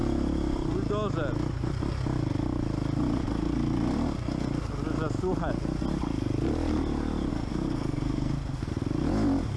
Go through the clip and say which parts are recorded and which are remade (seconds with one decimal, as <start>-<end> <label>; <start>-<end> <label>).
0.0-7.3 recorded; 7.3-8.7 remade; 8.7-9.6 recorded